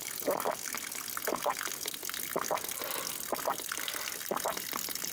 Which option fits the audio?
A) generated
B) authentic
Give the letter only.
B